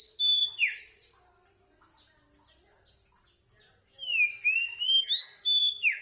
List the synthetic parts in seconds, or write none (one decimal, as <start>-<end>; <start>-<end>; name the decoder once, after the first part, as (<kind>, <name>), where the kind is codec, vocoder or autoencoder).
0.0-0.4 (autoencoder, DAC-VAE); 3.8-6.0